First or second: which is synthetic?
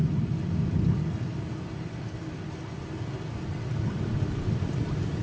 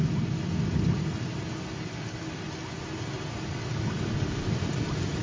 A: first